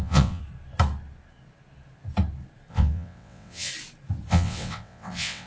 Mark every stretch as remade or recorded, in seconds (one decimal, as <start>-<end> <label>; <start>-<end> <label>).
0.0-0.4 remade; 0.4-2.7 recorded; 2.7-3.7 remade; 3.7-4.3 recorded; 4.3-5.5 remade